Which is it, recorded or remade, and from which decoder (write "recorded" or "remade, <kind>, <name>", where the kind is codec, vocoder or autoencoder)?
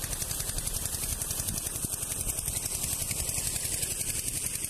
recorded